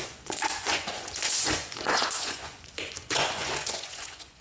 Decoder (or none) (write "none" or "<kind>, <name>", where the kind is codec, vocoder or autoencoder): vocoder, Vocos